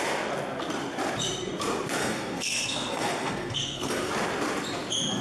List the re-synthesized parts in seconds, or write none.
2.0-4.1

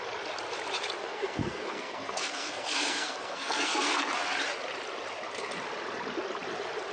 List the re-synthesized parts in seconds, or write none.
1.0-4.1